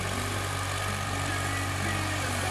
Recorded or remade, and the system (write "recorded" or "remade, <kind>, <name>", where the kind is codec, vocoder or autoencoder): remade, vocoder, BigVGAN v2